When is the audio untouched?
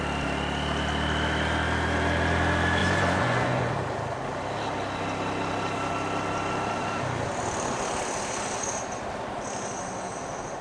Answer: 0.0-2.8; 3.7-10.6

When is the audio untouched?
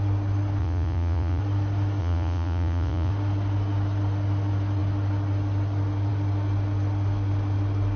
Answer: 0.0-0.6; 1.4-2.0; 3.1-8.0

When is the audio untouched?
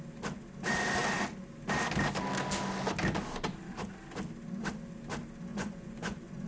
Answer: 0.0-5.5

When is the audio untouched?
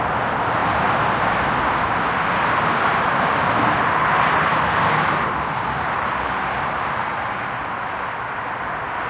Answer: 0.0-9.1